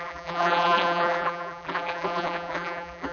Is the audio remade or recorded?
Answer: remade